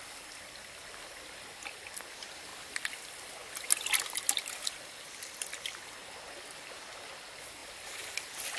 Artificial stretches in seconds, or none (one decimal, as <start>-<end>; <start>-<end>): none